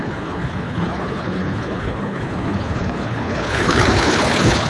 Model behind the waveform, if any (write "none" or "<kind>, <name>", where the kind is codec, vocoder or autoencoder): codec, HILCodec